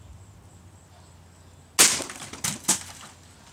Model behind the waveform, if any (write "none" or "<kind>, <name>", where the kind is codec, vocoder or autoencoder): none